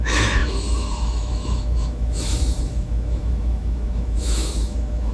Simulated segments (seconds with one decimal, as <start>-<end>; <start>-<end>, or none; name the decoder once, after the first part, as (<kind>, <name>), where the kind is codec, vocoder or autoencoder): 0.0-5.1 (autoencoder, DAC-VAE)